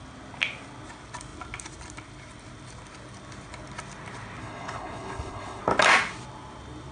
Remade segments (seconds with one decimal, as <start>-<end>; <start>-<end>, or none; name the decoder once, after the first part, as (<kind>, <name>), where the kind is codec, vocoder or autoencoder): 4.4-5.6 (codec, HILCodec)